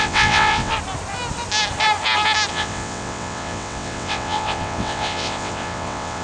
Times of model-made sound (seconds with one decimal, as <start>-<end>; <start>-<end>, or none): 0.0-0.7; 2.5-6.2

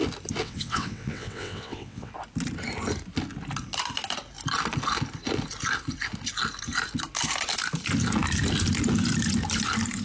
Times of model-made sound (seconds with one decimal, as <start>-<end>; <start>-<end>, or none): 0.4-2.1

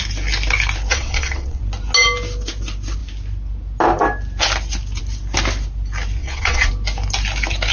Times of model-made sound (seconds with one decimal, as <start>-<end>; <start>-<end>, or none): 0.9-1.6; 6.2-6.7

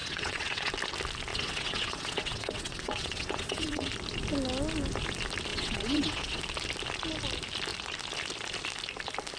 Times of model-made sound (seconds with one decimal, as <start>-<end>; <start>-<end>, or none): 0.0-0.7; 1.3-3.9; 5.5-6.4